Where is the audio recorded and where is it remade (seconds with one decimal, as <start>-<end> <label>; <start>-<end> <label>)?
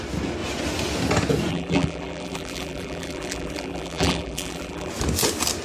0.0-1.5 recorded; 1.5-4.9 remade; 4.9-5.6 recorded